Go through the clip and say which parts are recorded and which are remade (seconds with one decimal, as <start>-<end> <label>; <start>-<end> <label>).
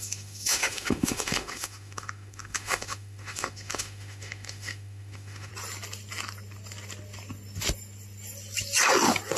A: 0.0-5.5 remade; 5.5-9.4 recorded